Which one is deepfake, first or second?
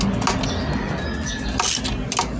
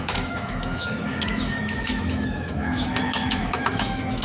second